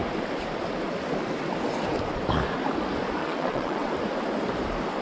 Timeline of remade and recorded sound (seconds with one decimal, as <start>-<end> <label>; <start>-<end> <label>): 0.0-3.2 recorded; 3.2-3.9 remade; 3.9-5.0 recorded